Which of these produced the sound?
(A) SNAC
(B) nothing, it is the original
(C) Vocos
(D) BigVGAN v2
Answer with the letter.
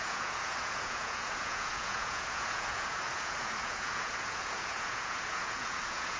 C